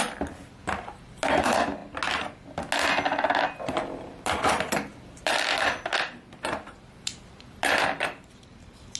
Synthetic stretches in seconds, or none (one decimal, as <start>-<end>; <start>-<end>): 0.0-1.8; 3.6-9.0

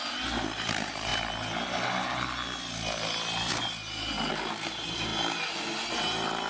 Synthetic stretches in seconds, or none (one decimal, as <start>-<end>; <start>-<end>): 0.0-1.1; 4.3-5.1; 5.9-6.5

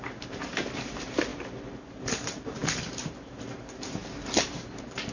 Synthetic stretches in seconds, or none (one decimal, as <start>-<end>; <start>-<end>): 0.0-5.1

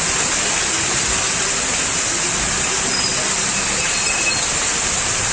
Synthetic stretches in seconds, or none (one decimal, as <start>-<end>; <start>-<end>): none

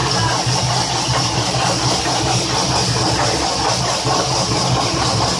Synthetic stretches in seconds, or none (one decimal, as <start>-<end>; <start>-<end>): none

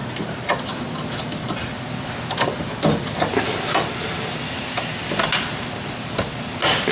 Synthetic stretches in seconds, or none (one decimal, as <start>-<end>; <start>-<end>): none